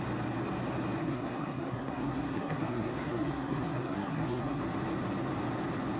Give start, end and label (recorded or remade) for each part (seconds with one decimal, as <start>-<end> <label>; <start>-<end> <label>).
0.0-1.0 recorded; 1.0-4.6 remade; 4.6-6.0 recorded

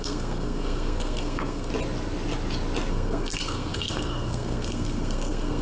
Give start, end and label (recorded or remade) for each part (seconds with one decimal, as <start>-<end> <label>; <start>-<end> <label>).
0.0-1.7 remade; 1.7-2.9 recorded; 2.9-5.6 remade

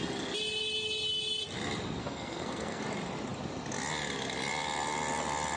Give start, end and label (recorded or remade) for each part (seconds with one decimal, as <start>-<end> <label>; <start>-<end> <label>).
0.0-2.0 recorded; 2.0-2.8 remade; 2.8-5.6 recorded

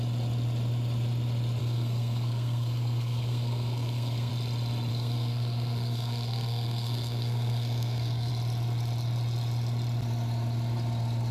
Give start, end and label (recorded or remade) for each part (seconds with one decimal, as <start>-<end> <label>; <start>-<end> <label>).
0.0-1.6 recorded; 1.6-4.3 remade; 4.3-4.9 recorded; 4.9-8.3 remade; 8.3-11.3 recorded